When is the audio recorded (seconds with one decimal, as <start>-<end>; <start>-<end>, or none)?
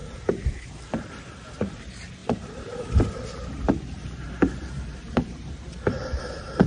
0.8-2.2; 6.2-6.7